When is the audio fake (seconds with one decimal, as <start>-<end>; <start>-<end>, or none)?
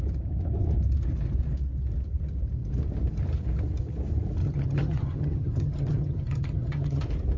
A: 4.4-7.0